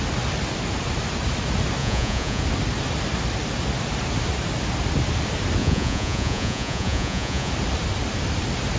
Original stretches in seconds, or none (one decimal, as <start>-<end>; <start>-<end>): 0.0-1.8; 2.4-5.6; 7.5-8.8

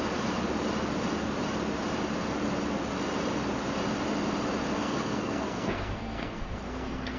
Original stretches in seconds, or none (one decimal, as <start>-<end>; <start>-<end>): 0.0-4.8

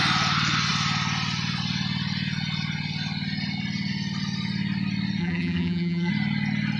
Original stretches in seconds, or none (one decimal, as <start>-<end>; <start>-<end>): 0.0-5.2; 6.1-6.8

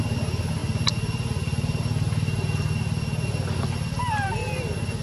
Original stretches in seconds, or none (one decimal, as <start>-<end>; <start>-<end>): 0.0-5.0

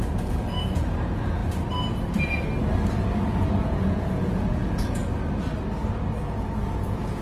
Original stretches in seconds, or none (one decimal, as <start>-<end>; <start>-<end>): 1.4-3.6; 5.0-6.2